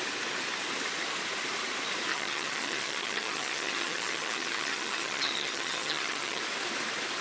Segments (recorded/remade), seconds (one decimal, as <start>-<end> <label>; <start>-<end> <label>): 0.0-2.1 recorded; 2.1-6.4 remade; 6.4-7.2 recorded